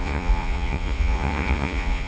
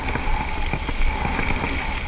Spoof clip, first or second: first